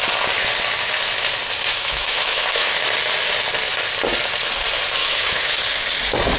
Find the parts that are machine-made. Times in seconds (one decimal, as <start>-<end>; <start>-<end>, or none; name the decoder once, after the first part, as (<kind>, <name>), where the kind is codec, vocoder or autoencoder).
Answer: 1.7-2.7 (autoencoder, DAC-VAE); 5.0-5.6